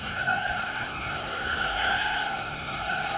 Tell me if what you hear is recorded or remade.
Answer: remade